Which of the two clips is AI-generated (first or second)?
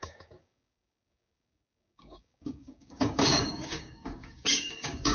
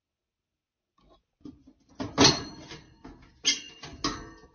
first